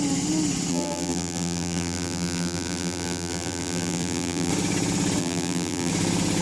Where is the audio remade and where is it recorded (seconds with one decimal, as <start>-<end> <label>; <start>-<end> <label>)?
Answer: 0.0-0.7 recorded; 0.7-4.5 remade; 4.5-5.2 recorded; 5.2-5.9 remade; 5.9-6.4 recorded